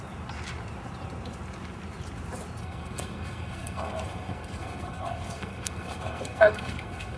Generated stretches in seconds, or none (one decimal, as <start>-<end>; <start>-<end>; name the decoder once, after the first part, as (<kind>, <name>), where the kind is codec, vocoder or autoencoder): 2.6-7.2 (codec, SNAC)